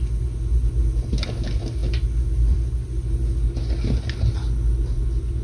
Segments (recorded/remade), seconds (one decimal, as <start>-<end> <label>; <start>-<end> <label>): 0.0-5.4 recorded